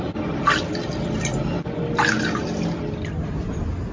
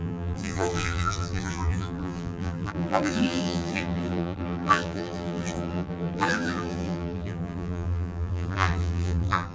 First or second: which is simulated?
second